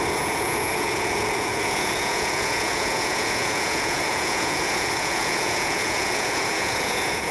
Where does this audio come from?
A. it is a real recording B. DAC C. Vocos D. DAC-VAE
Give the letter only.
C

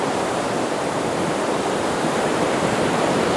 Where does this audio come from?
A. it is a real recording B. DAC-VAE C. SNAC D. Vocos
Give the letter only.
A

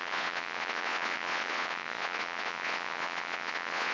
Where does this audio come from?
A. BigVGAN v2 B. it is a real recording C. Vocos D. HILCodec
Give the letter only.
C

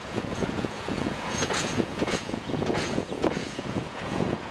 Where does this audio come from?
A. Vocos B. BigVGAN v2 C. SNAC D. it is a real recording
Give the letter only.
A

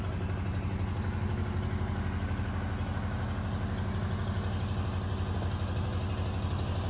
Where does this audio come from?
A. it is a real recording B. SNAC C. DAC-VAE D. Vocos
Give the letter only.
A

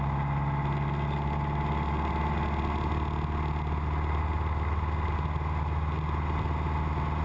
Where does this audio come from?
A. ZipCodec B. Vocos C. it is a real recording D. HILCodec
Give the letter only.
C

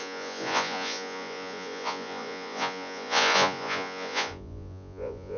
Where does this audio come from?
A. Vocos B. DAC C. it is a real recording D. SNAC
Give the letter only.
A